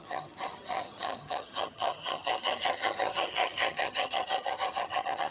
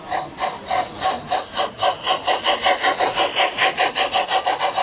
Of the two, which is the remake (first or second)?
first